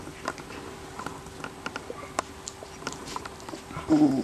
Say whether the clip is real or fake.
real